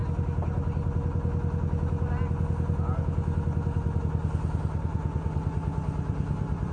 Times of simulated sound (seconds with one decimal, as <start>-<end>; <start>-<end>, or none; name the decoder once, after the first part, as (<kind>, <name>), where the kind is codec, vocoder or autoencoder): none

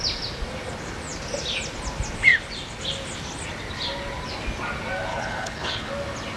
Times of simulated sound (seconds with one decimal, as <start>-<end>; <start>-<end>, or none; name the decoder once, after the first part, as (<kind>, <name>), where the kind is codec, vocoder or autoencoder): 5.1-5.9 (codec, HILCodec)